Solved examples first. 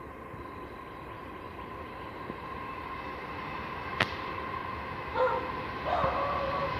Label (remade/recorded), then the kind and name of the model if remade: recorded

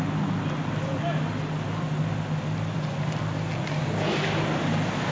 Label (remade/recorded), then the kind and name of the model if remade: recorded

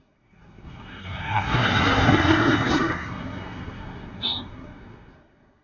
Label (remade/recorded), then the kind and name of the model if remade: remade, codec, SNAC